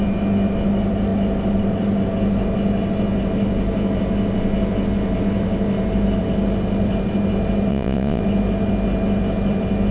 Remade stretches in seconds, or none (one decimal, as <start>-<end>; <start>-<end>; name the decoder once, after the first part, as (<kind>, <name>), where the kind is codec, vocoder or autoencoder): 7.7-8.2 (vocoder, Vocos)